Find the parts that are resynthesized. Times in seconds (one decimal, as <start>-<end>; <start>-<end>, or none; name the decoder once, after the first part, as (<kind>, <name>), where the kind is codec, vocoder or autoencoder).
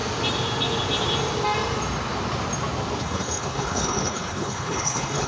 3.0-5.3 (codec, HILCodec)